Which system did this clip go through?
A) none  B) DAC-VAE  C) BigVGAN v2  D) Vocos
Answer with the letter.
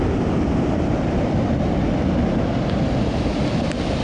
A